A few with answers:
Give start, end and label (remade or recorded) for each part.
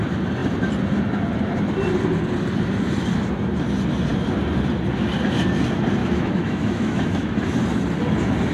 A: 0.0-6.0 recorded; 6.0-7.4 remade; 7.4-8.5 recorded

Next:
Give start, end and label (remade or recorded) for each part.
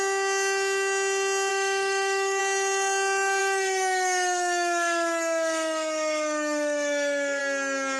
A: 0.0-1.5 recorded; 1.5-2.4 remade; 2.4-3.4 recorded; 3.4-7.4 remade; 7.4-8.0 recorded